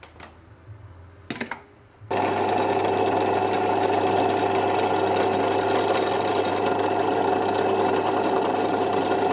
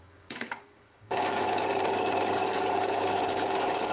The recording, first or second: first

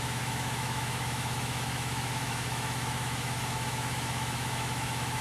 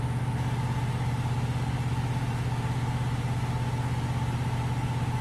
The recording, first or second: second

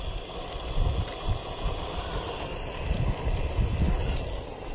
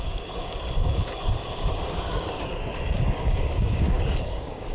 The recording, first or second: first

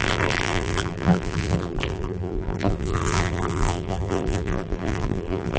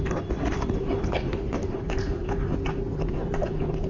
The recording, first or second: second